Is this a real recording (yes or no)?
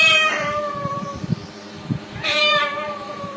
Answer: no